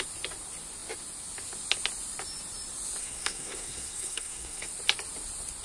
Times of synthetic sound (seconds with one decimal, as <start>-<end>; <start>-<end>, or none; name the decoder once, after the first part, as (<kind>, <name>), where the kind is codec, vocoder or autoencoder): 3.0-4.7 (codec, SNAC)